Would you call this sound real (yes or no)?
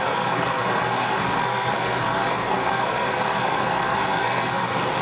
no